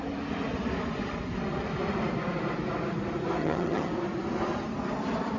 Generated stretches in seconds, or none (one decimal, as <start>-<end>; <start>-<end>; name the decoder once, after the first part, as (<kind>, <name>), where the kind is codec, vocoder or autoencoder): 3.4-3.9 (vocoder, HiFi-GAN)